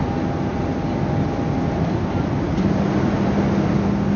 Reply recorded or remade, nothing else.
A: recorded